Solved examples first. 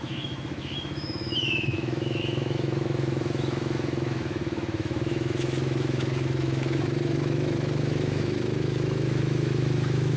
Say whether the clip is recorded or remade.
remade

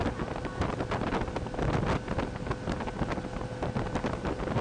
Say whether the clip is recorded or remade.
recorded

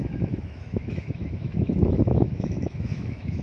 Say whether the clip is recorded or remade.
remade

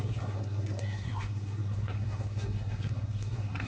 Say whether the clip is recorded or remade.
remade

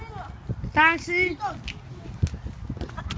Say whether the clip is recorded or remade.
recorded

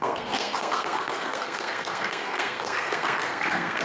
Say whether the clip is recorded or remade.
remade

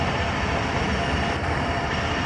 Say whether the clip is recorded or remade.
recorded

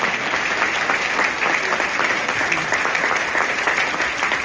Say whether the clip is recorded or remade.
recorded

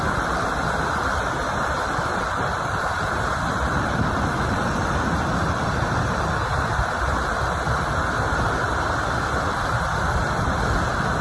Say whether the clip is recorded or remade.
remade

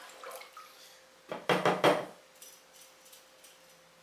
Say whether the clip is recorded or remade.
recorded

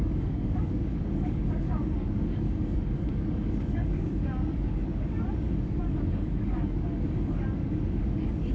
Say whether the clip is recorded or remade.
remade